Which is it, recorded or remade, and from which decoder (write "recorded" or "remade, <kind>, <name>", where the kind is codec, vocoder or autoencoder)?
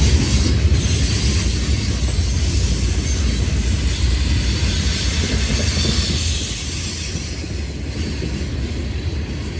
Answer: recorded